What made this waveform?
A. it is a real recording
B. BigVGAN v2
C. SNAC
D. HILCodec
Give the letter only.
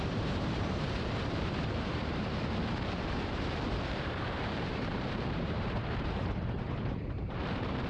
B